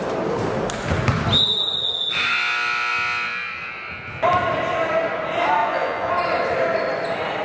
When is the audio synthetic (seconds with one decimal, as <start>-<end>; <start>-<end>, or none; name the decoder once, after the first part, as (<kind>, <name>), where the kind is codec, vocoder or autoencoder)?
5.6-6.1 (vocoder, Vocos)